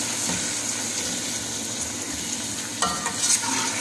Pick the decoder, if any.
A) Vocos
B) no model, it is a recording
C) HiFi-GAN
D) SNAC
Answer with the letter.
B